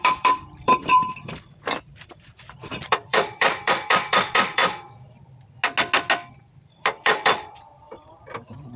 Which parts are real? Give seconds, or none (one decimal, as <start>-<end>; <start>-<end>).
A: 4.6-6.3